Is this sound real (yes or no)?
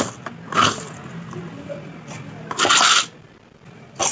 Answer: yes